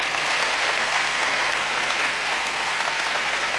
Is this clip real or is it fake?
fake